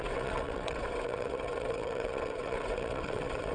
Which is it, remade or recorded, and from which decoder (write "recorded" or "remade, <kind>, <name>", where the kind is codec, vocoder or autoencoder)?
remade, vocoder, WaveNeXt